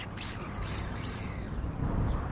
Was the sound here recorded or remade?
remade